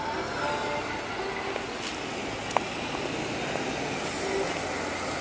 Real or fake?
real